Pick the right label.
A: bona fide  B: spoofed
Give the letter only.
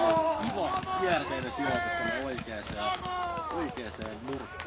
B